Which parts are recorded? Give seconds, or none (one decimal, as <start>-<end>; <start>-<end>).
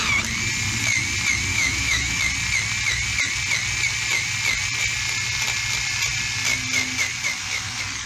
0.0-1.5; 2.2-8.1